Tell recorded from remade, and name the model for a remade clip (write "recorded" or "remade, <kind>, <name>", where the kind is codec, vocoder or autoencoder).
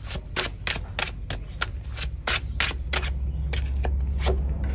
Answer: recorded